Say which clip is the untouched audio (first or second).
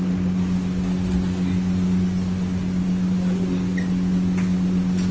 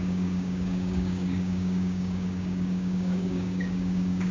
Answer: first